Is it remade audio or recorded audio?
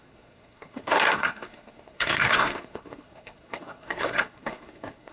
remade